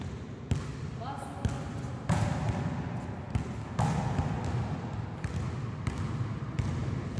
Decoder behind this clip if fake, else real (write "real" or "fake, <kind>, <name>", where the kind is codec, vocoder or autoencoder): real